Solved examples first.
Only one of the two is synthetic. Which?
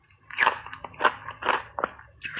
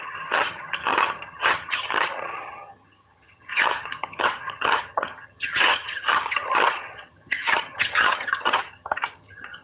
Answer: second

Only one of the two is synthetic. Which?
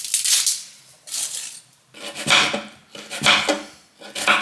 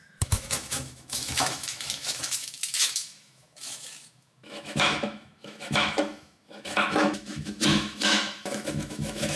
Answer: second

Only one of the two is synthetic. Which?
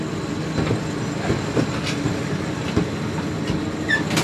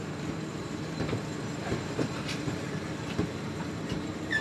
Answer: second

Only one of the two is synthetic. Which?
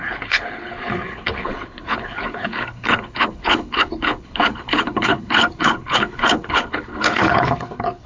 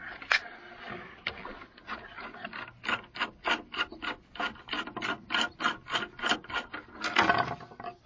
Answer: first